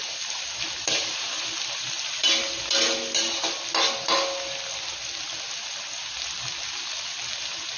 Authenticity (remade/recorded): recorded